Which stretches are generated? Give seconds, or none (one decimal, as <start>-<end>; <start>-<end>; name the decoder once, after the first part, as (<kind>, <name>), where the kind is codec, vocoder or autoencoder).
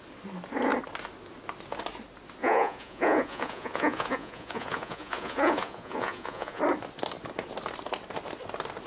2.4-6.6 (vocoder, Vocos)